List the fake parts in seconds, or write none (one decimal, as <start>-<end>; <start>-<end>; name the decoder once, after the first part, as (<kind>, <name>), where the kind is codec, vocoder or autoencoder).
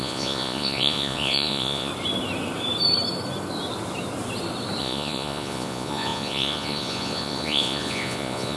0.0-1.9 (vocoder, Vocos); 4.8-8.6